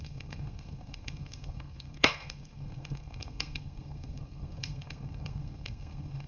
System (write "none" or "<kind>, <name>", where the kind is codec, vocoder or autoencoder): codec, SNAC